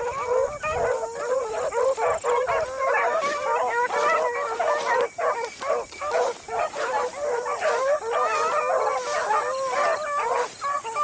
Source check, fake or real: real